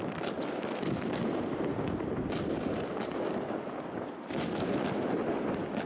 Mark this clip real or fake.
real